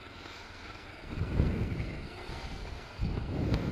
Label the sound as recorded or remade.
remade